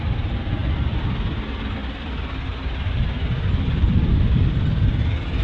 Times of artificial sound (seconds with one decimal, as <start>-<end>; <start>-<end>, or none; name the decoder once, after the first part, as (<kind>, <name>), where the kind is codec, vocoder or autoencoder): none

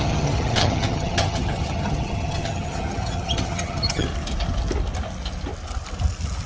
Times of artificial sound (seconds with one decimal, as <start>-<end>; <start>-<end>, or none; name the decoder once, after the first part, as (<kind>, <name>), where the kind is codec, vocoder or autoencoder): 0.0-4.1 (vocoder, HiFi-GAN)

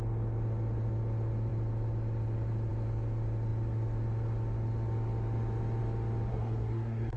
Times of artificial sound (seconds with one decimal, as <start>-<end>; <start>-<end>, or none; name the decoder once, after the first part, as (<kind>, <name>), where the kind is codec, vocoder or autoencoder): 6.3-7.2 (codec, SNAC)

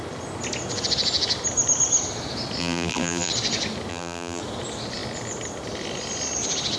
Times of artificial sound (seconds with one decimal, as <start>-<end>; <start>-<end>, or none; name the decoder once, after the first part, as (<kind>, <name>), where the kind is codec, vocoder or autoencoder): 2.6-3.3 (vocoder, BigVGAN v2); 3.9-4.4

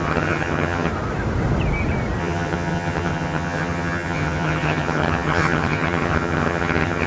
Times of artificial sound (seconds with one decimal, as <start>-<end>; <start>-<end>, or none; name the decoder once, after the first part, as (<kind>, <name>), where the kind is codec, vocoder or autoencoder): 0.0-0.9 (vocoder, HiFi-GAN); 2.2-7.1

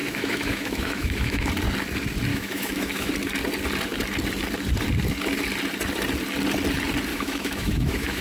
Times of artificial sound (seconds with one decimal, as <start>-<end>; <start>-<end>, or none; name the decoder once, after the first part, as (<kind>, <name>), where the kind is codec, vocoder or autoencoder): 0.0-1.5 (autoencoder, DAC-VAE); 2.3-3.1; 7.1-8.2

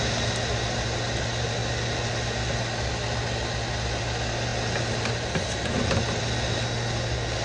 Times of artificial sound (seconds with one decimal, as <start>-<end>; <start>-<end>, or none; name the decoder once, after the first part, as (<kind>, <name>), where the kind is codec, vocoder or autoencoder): none

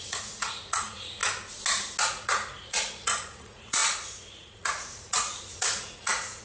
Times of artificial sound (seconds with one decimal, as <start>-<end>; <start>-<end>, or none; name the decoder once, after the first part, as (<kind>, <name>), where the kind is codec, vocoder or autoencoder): 0.0-1.2 (vocoder, Vocos); 2.0-6.4